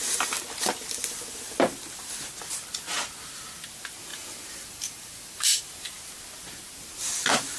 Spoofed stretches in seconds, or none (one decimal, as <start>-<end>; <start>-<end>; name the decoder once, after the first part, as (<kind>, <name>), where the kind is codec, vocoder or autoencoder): 4.1-5.6 (vocoder, BigVGAN v2)